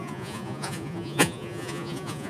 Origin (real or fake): fake